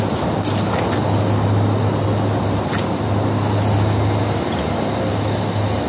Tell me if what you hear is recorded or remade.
recorded